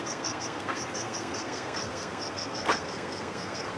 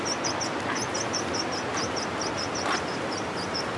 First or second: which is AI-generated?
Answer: first